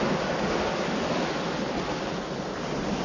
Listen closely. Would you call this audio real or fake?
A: real